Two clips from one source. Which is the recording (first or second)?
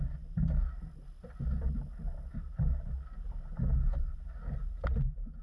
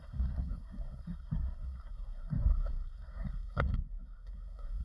first